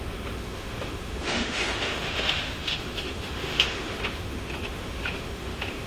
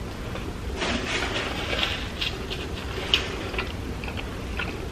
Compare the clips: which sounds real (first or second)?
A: second